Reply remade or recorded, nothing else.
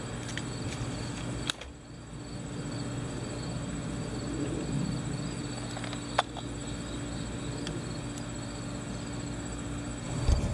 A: recorded